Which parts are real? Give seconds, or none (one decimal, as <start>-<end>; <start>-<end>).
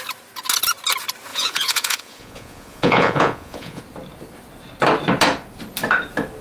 0.0-1.3; 3.8-6.4